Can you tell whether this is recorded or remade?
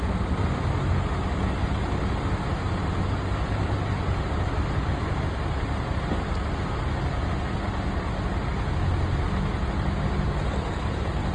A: recorded